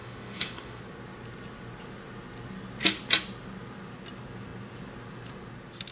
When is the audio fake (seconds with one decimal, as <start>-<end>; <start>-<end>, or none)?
0.0-0.8